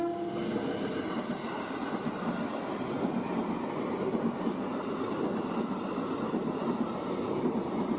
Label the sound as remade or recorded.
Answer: recorded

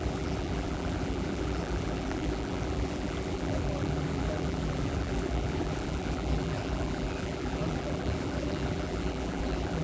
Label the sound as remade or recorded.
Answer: remade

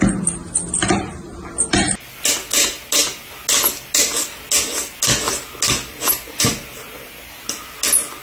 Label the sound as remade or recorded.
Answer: recorded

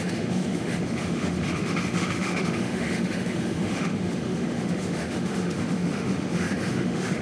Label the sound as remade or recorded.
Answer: remade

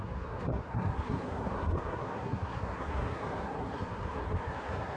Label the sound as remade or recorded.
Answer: remade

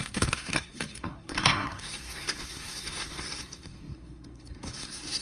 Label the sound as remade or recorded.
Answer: remade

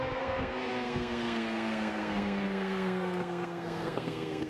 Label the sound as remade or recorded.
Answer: remade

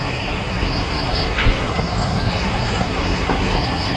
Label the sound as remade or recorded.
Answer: remade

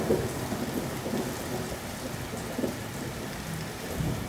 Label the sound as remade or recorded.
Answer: recorded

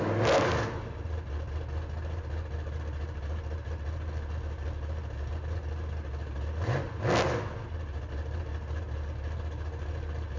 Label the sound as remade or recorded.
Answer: recorded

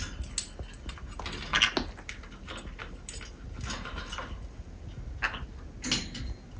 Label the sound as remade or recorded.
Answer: recorded